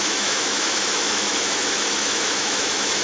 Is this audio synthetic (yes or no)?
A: yes